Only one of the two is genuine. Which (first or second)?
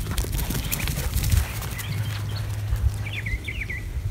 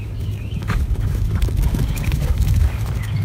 first